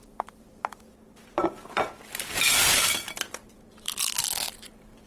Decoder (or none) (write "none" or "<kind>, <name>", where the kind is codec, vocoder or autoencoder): vocoder, BigVGAN v2